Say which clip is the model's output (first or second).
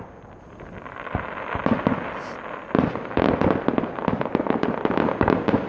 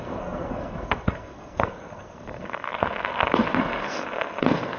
second